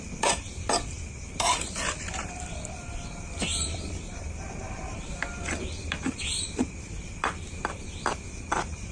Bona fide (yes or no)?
no